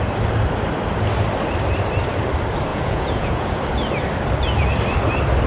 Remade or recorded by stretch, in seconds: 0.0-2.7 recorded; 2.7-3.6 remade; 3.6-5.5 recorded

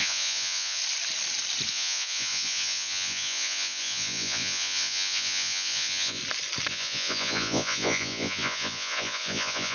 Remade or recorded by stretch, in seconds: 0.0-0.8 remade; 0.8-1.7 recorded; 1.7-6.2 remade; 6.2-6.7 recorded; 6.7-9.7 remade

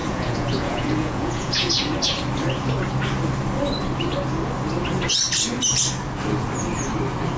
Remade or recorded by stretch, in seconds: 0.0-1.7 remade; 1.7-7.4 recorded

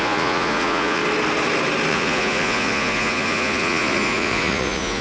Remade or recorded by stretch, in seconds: 0.0-1.0 remade; 1.0-1.9 recorded; 1.9-5.0 remade

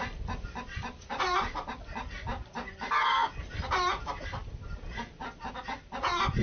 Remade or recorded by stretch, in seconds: 0.0-6.4 recorded

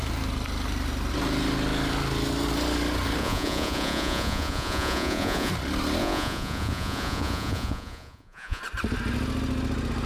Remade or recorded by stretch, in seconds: 0.0-3.2 recorded; 3.2-5.5 remade; 5.5-6.0 recorded; 6.0-8.6 remade; 8.6-10.1 recorded

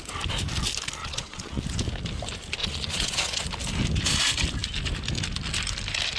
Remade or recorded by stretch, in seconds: 0.0-1.0 recorded; 1.0-1.6 remade; 1.6-2.6 recorded; 2.6-3.4 remade; 3.4-6.2 recorded

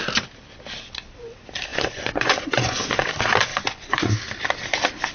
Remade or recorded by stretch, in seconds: 0.0-1.7 recorded; 1.7-3.1 remade; 3.1-3.5 recorded; 3.5-4.1 remade; 4.1-5.1 recorded